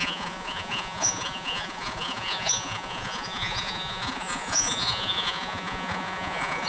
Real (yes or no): no